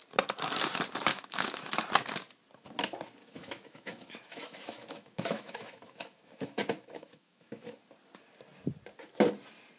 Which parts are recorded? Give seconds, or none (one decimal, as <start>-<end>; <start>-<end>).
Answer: 0.0-1.1; 1.7-3.2; 7.8-9.8